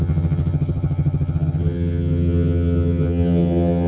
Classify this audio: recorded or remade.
remade